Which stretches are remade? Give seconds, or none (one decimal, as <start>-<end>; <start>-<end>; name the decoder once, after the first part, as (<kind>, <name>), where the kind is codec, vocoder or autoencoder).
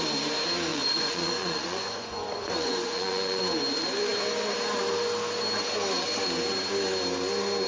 0.7-3.4 (vocoder, Vocos)